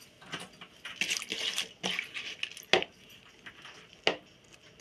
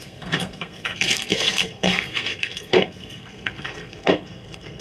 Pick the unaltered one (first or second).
first